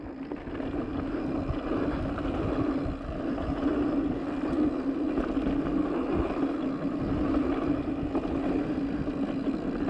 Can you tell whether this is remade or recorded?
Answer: recorded